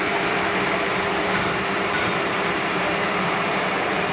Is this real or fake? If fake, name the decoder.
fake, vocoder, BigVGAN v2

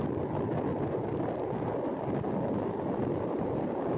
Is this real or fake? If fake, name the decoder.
real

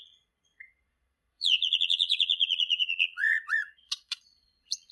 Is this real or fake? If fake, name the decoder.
fake, vocoder, Vocos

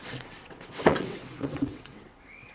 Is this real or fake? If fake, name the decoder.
fake, vocoder, WaveNeXt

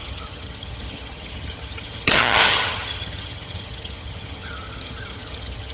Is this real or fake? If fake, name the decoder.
fake, vocoder, HiFi-GAN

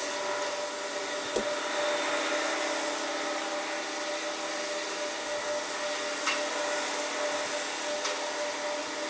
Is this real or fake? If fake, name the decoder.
real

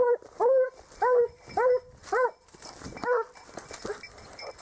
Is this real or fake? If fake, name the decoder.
real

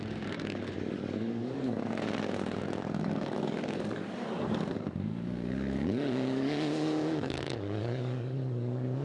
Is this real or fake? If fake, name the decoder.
fake, codec, DAC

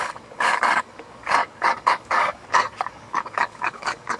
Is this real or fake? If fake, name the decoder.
fake, codec, DAC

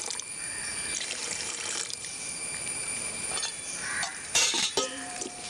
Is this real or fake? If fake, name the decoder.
fake, vocoder, BigVGAN v2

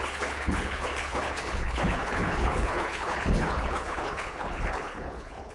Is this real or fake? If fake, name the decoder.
fake, codec, HILCodec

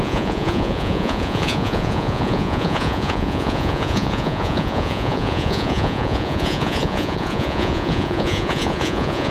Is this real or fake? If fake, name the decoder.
fake, vocoder, Vocos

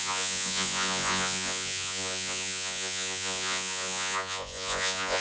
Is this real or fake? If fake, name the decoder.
fake, vocoder, Vocos